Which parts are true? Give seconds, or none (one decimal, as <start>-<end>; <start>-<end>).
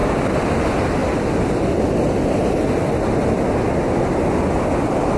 0.0-5.2